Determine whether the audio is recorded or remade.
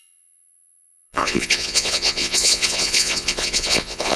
remade